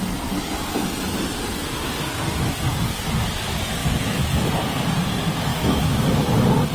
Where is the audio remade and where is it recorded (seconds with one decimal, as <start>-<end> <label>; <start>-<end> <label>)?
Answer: 0.0-3.8 recorded; 3.8-4.5 remade; 4.5-5.5 recorded; 5.5-6.2 remade; 6.2-6.7 recorded